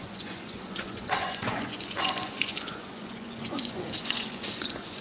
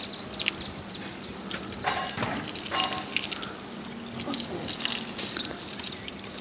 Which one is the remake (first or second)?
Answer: first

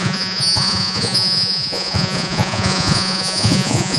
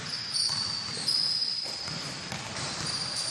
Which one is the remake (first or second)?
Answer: first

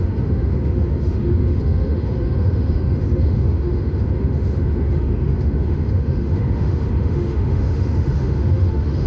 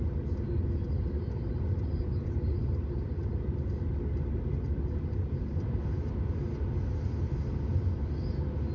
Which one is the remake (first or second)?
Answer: first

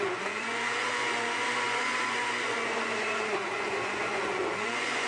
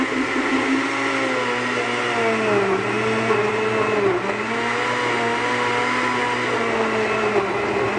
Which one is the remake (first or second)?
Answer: first